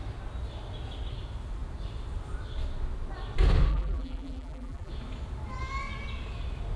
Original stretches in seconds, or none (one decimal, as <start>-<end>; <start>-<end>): 0.0-3.7; 4.9-6.8